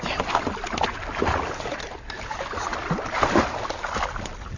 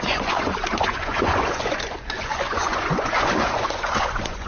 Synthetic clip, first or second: second